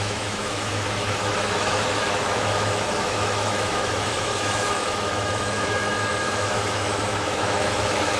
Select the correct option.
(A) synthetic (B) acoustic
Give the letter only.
A